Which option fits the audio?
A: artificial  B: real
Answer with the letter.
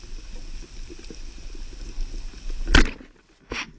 B